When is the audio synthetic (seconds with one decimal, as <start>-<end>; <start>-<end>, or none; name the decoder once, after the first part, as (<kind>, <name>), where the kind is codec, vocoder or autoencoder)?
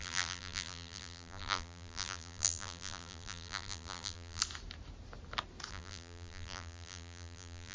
0.0-4.4 (vocoder, BigVGAN v2); 5.7-7.7